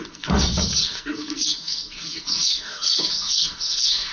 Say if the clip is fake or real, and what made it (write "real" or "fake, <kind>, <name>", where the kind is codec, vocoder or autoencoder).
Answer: fake, codec, SNAC